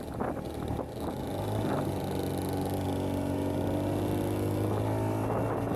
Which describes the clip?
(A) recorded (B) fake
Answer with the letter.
A